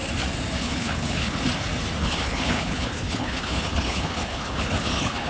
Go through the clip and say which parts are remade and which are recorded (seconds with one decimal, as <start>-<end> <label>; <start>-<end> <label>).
0.0-0.6 recorded; 0.6-1.4 remade; 1.4-2.0 recorded; 2.0-5.3 remade